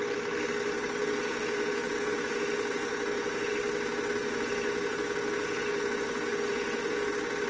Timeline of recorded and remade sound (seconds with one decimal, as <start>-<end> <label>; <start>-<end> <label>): 0.0-1.0 recorded; 1.0-3.5 remade; 3.5-4.2 recorded; 4.2-7.1 remade; 7.1-7.5 recorded